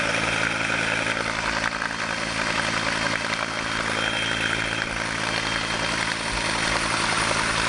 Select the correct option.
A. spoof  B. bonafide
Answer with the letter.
B